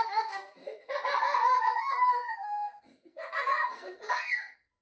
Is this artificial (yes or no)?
yes